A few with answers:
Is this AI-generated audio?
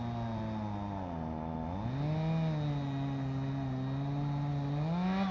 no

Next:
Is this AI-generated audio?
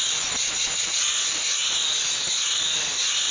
no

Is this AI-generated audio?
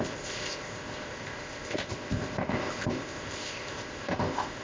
yes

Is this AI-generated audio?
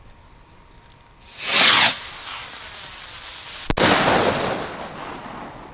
no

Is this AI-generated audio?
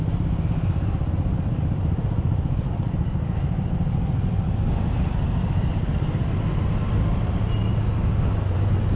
no